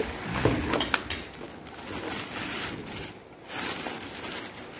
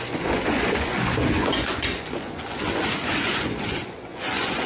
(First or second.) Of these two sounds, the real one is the first